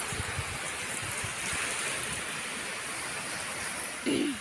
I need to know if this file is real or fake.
real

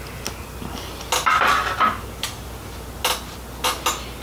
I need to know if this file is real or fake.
real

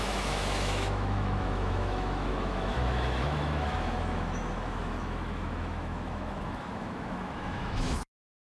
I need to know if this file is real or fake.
fake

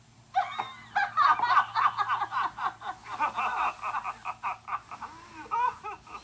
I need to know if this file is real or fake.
real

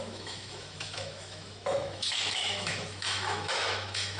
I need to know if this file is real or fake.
fake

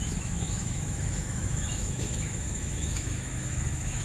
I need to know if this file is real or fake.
fake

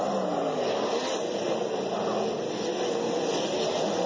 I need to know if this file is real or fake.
real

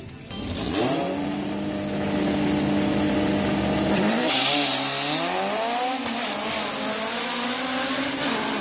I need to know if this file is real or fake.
real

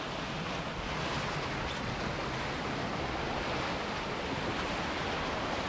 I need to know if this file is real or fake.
real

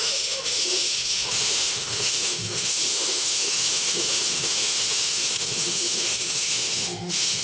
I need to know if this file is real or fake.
fake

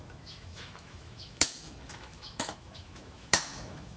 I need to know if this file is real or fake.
fake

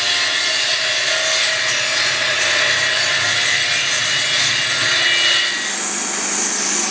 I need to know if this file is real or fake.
real